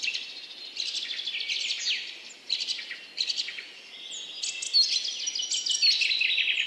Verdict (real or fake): real